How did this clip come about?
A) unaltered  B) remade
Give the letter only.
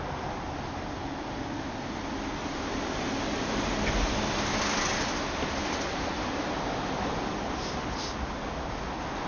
A